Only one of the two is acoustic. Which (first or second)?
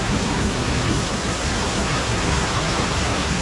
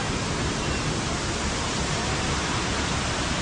second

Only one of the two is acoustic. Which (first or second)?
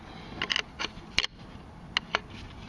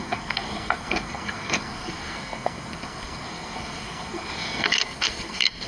first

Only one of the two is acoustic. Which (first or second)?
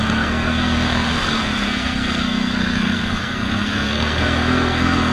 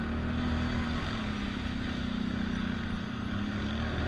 second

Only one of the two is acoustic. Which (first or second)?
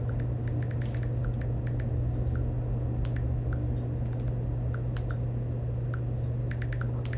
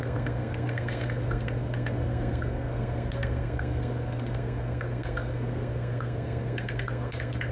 first